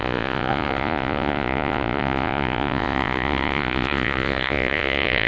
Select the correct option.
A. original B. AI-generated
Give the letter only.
B